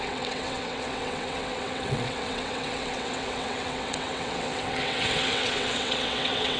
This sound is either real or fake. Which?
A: fake